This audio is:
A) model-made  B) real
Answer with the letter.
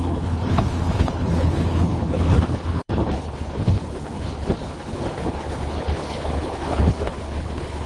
A